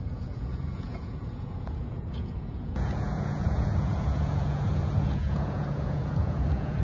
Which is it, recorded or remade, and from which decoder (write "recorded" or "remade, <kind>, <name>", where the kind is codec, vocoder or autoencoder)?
remade, vocoder, Vocos